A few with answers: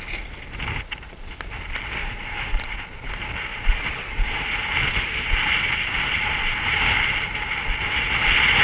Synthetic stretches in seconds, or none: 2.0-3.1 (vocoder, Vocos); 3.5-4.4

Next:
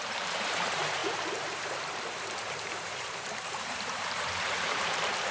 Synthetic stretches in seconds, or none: 0.0-5.3 (vocoder, BigVGAN v2)

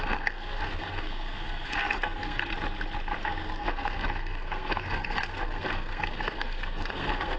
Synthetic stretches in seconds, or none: 0.0-2.5 (codec, SNAC); 3.2-7.4

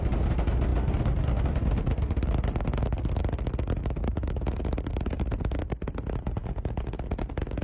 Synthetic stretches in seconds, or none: none